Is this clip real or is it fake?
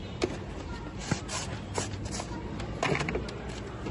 real